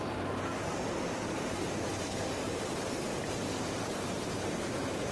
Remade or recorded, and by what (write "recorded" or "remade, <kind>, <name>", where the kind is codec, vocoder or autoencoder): remade, vocoder, BigVGAN v2